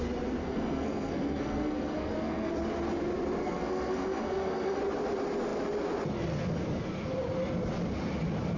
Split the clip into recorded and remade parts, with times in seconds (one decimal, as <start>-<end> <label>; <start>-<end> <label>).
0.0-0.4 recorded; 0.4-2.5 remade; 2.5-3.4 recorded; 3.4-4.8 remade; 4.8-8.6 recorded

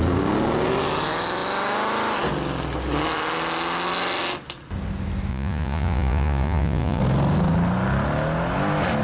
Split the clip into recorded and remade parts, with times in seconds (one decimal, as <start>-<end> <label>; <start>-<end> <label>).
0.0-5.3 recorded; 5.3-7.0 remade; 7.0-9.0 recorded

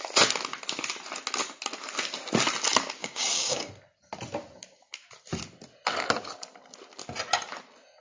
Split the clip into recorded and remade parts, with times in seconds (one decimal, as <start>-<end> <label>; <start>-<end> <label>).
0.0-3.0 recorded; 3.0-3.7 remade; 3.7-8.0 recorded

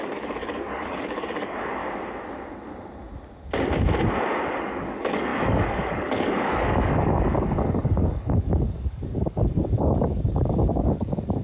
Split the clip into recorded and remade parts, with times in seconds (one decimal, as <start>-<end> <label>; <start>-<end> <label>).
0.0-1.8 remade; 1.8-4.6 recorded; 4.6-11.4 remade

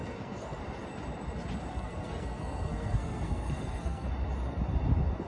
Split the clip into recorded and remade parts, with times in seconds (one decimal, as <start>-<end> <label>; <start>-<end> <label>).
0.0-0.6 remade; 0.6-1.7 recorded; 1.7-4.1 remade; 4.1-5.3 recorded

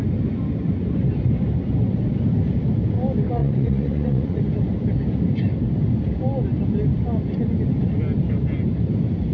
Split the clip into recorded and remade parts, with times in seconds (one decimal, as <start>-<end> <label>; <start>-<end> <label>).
0.0-3.4 recorded; 3.4-4.4 remade; 4.4-9.3 recorded